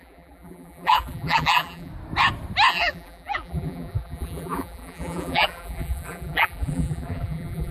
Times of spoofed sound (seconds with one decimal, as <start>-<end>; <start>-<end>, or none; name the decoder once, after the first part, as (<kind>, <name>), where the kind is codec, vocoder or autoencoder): 0.0-1.9 (vocoder, BigVGAN v2); 2.7-7.7